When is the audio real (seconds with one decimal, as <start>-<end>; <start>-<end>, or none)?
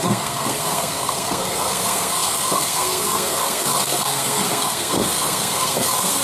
none